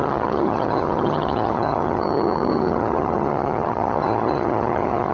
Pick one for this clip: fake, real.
fake